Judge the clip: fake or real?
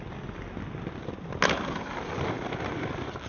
real